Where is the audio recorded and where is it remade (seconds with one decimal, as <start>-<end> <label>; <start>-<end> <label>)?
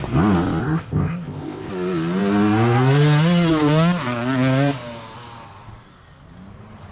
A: 0.0-0.6 recorded; 0.6-1.7 remade; 1.7-6.9 recorded